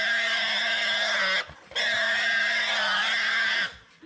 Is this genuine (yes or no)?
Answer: yes